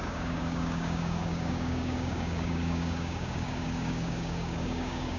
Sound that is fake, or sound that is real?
fake